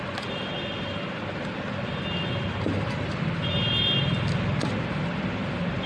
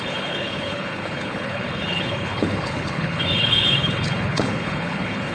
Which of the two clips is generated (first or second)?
second